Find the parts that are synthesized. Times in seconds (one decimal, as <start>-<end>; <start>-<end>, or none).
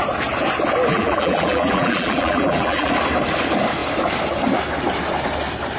0.9-2.9